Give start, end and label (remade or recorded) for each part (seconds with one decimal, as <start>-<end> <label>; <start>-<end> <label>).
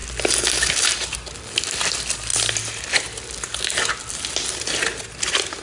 0.0-5.6 recorded